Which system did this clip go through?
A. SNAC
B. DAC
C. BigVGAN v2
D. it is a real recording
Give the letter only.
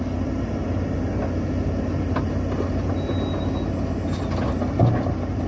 D